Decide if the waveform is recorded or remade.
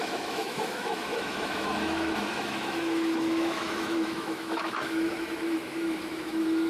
remade